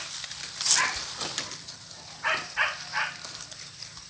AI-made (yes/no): no